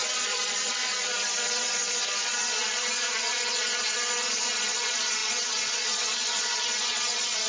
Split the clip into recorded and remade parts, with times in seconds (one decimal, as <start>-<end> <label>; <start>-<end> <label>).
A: 0.0-7.5 remade